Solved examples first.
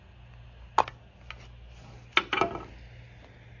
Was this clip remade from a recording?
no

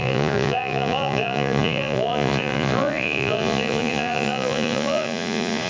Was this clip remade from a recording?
yes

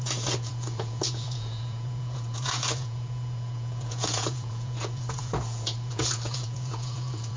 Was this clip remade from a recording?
yes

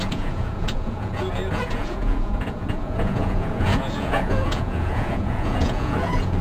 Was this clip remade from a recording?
yes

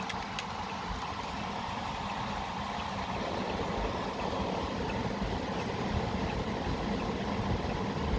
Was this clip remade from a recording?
no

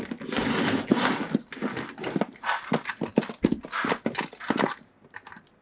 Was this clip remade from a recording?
no